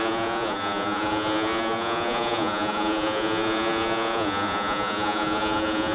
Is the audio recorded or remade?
remade